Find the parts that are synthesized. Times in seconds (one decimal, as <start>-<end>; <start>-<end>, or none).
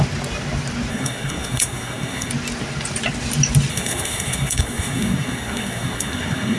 0.9-2.3; 3.7-6.6